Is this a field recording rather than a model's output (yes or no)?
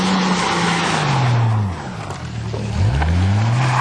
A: yes